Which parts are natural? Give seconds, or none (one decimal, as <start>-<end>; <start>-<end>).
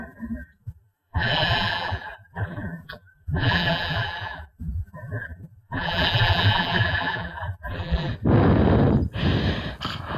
8.1-10.2